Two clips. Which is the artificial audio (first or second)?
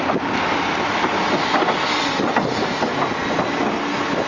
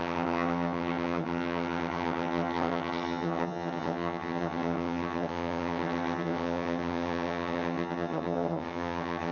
second